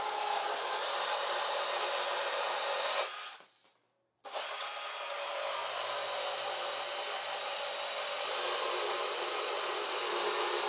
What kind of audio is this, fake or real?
real